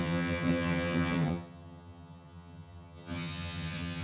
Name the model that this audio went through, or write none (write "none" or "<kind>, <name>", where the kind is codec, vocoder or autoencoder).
vocoder, HiFi-GAN